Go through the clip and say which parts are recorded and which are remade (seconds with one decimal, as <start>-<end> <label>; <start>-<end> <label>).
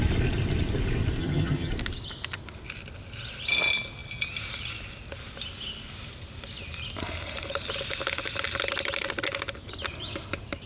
0.0-1.2 recorded; 1.2-1.7 remade; 1.7-10.7 recorded